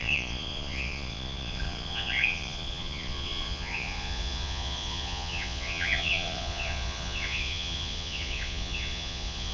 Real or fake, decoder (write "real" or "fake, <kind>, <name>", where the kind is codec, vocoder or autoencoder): fake, vocoder, Vocos